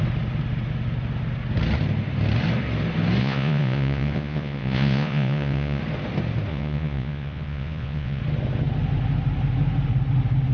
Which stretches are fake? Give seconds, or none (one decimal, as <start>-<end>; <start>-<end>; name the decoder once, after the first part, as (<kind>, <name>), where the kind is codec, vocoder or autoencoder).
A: 3.2-5.8 (vocoder, Vocos); 6.5-8.2